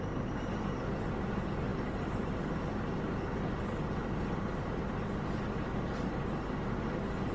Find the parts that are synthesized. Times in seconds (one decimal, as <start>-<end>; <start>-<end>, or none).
none